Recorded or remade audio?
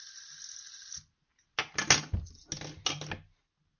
recorded